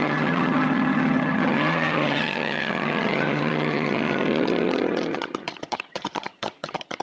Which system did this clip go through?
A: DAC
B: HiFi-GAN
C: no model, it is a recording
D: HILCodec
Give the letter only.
B